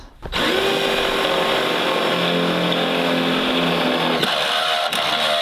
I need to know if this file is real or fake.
real